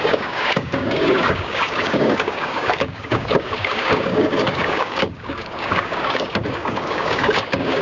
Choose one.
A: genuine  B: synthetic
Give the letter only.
B